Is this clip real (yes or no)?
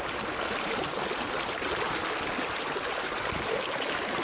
yes